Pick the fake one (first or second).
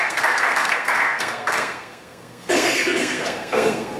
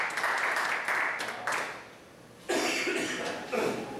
first